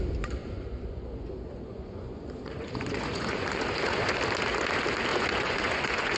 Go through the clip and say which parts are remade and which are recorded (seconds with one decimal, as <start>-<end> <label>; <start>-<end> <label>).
0.0-0.4 recorded; 0.4-4.1 remade; 4.1-5.1 recorded; 5.1-6.2 remade